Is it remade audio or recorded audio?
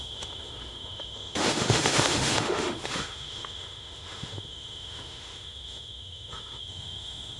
remade